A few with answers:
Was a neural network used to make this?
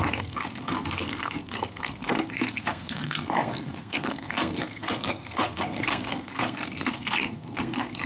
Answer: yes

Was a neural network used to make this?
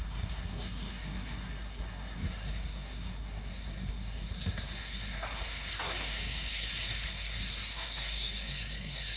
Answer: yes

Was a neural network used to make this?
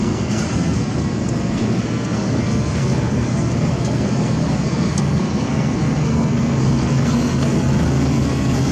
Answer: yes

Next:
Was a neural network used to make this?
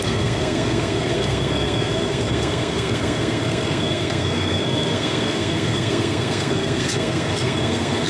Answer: yes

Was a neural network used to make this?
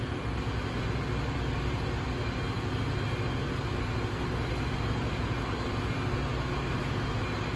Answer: no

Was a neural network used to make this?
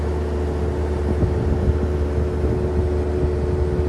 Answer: no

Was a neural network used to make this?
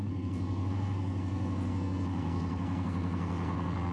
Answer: yes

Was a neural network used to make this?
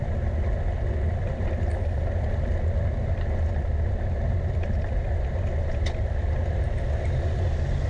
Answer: no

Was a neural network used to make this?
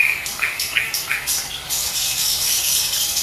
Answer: yes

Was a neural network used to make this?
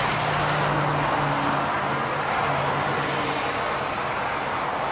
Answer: no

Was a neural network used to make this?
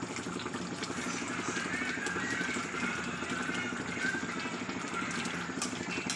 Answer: no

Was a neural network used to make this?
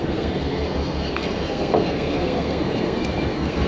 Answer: yes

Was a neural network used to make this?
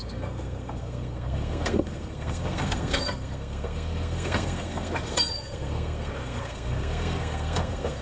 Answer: yes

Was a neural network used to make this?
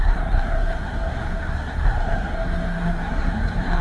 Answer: yes